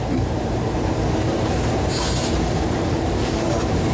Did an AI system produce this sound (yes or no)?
yes